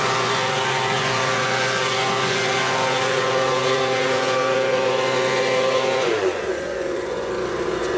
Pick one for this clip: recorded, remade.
remade